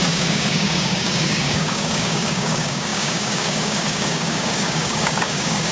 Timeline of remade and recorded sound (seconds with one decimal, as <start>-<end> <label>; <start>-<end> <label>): 0.0-5.7 remade